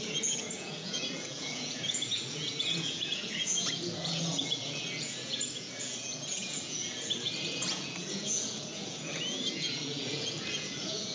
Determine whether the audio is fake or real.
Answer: fake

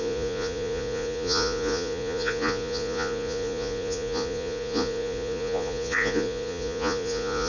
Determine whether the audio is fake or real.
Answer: fake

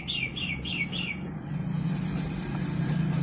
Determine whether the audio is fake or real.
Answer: real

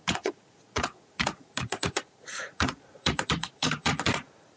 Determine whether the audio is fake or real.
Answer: fake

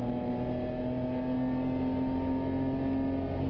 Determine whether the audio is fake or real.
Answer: real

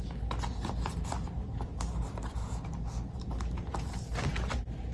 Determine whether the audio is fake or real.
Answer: real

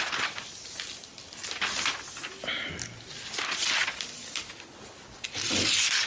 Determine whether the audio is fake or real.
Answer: real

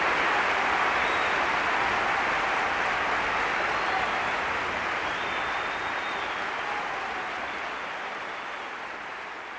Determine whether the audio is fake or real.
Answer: real